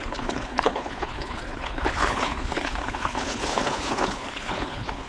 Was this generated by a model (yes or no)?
yes